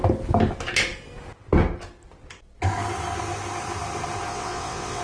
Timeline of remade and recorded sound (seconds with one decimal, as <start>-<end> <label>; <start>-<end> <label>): 0.0-4.3 recorded; 4.3-5.0 remade